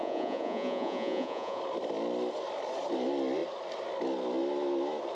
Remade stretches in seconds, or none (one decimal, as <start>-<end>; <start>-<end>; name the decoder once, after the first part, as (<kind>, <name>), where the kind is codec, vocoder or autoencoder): 0.0-1.6 (vocoder, Vocos)